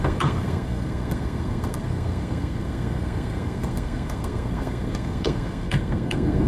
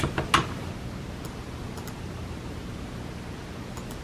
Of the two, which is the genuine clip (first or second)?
second